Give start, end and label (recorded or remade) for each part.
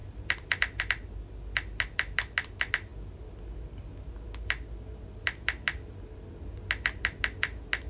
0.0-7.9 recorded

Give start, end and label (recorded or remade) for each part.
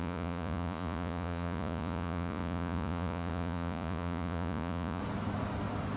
0.0-5.0 remade; 5.0-6.0 recorded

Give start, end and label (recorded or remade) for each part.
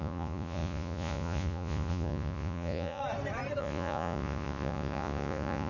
0.0-3.0 remade; 3.0-3.6 recorded; 3.6-5.7 remade